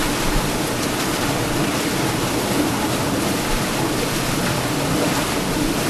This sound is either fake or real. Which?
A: real